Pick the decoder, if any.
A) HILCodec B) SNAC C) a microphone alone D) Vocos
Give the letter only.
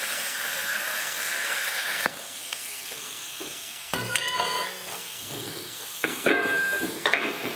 B